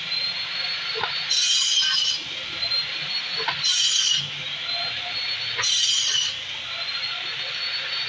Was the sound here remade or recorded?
recorded